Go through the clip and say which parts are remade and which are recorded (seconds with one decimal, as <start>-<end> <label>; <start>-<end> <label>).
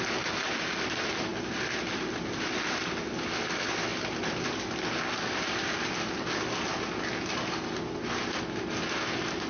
0.0-9.5 recorded